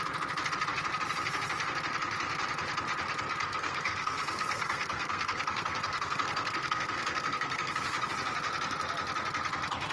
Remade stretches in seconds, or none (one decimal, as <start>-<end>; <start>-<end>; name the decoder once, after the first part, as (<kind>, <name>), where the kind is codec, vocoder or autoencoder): 3.5-8.1 (codec, SNAC)